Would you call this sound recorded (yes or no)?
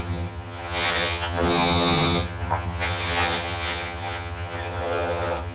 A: no